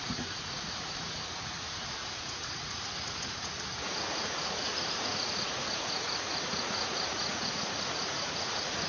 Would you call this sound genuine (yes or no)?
no